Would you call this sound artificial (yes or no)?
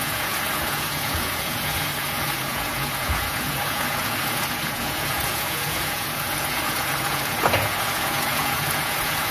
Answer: yes